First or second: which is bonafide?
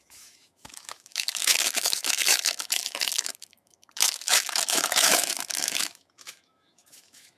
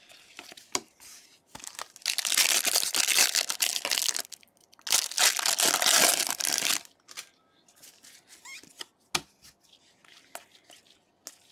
second